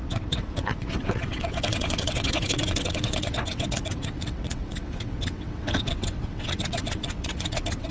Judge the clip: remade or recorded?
remade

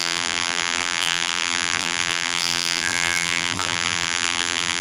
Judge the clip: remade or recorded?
remade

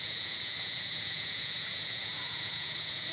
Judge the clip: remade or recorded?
remade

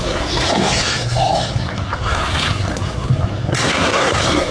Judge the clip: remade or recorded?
remade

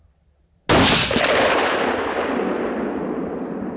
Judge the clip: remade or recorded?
recorded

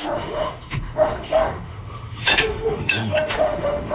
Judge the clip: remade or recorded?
remade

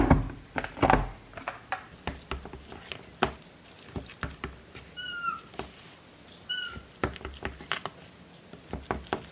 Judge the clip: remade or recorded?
recorded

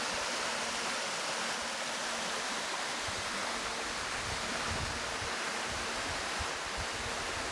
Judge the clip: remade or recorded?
recorded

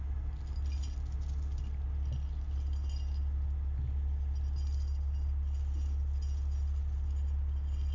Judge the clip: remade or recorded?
recorded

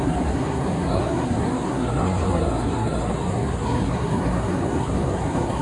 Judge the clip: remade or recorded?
remade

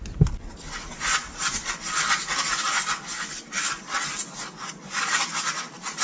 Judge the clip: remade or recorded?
remade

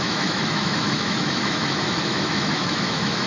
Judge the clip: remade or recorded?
remade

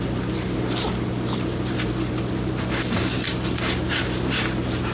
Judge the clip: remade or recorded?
recorded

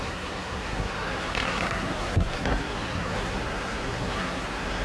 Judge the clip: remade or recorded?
remade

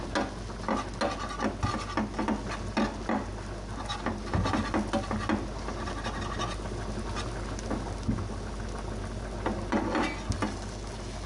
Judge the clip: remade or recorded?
recorded